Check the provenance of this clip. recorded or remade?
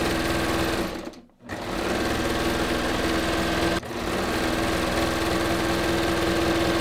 recorded